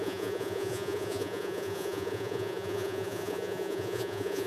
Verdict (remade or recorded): remade